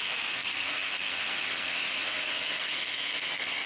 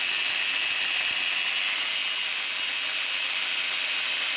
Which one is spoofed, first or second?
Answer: first